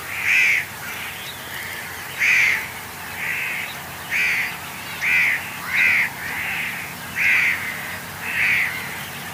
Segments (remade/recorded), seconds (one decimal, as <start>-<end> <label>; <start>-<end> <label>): 0.0-3.3 remade; 3.3-7.1 recorded; 7.1-9.3 remade